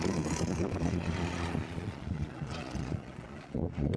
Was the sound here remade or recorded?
remade